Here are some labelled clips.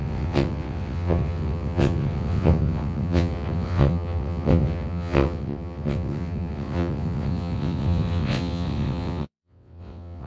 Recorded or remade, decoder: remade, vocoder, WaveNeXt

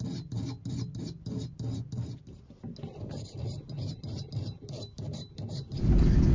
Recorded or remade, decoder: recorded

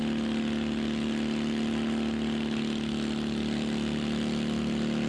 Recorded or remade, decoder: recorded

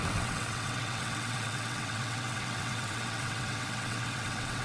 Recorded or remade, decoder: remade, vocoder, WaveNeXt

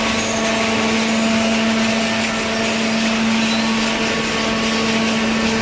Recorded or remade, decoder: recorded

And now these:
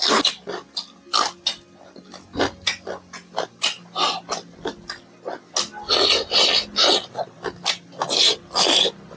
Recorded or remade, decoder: recorded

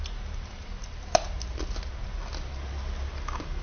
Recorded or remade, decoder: recorded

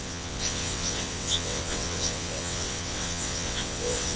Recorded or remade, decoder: remade, vocoder, WaveNeXt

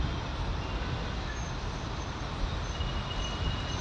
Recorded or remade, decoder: recorded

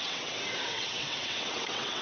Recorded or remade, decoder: remade, vocoder, WaveNeXt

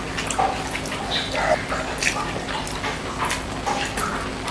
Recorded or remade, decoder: recorded